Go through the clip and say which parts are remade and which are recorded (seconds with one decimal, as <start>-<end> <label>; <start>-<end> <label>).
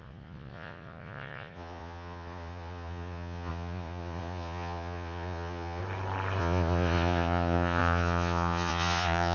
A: 0.0-5.8 remade; 5.8-6.4 recorded; 6.4-9.3 remade